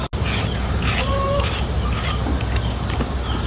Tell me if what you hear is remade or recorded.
recorded